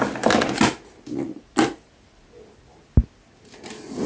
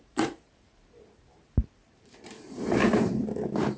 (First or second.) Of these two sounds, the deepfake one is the second